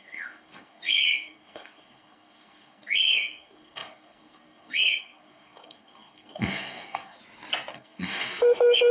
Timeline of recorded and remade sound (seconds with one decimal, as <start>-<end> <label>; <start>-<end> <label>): 0.0-7.2 remade; 7.2-7.7 recorded; 7.7-8.9 remade